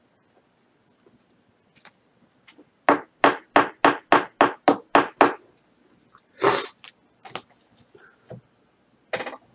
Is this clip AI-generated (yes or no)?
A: no